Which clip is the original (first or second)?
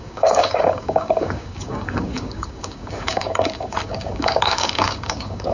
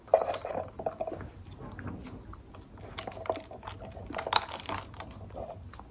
second